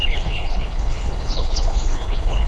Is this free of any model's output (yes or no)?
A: no